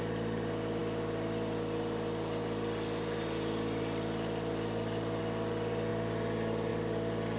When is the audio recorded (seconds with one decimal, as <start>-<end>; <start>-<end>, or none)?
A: 0.0-7.4